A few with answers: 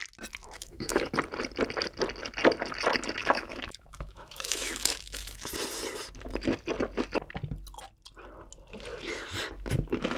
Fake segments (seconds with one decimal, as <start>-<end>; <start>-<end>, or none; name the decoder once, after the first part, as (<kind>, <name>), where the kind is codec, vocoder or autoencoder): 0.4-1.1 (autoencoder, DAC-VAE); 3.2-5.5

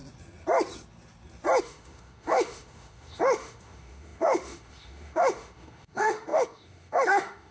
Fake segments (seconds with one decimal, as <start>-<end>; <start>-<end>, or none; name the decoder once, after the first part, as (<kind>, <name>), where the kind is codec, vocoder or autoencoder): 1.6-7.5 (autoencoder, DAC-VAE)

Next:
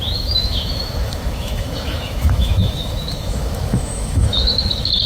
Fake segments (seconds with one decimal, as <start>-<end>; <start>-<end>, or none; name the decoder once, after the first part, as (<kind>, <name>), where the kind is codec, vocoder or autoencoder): 0.0-5.1 (autoencoder, DAC-VAE)